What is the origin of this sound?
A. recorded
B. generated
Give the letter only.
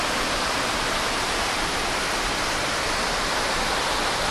A